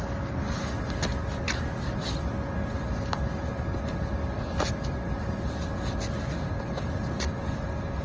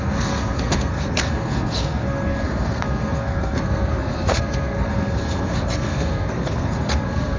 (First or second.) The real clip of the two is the first